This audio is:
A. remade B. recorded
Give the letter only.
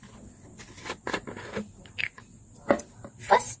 B